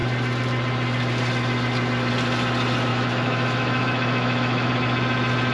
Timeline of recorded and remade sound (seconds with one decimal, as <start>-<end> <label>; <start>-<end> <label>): 0.0-2.9 recorded; 2.9-4.7 remade; 4.7-5.5 recorded